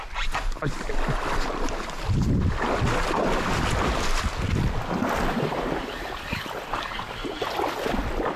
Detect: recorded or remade recorded